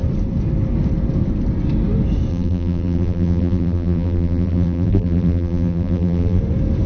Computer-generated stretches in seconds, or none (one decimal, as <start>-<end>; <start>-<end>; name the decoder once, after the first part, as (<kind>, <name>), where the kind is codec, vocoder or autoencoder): 2.3-6.4 (vocoder, BigVGAN v2)